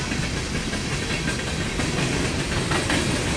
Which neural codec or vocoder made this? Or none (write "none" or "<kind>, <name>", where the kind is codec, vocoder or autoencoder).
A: none